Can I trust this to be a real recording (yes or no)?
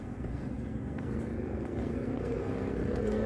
no